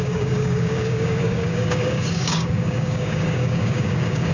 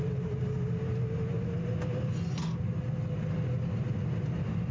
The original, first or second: second